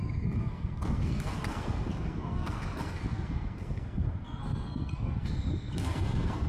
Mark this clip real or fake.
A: fake